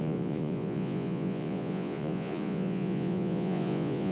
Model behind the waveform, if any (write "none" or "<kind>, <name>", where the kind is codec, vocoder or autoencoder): vocoder, Vocos